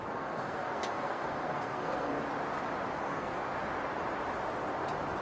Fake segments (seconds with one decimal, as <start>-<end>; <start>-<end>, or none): 0.0-2.2; 3.0-3.4